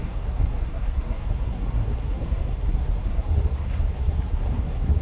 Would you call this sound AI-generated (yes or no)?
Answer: yes